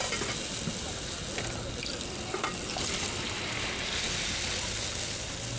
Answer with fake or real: real